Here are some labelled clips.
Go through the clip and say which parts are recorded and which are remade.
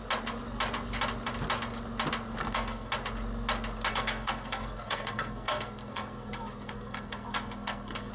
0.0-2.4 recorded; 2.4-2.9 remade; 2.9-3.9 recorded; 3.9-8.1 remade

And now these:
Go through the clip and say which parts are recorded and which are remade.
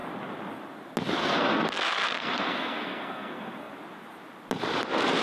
0.0-1.2 recorded; 1.2-3.7 remade; 3.7-5.2 recorded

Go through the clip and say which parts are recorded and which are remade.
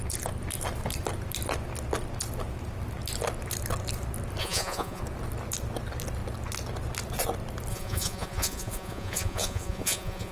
0.0-4.4 recorded; 4.4-5.0 remade; 5.0-7.7 recorded; 7.7-10.3 remade